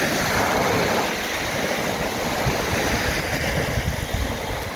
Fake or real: real